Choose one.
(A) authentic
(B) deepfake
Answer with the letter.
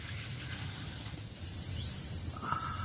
A